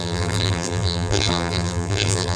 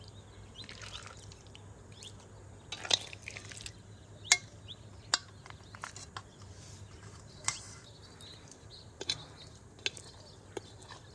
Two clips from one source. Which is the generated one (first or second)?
first